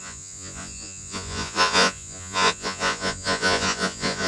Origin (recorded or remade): remade